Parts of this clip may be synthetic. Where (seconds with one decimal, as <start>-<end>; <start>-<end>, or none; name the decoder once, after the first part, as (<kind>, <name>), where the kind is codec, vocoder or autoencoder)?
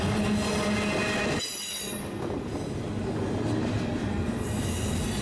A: none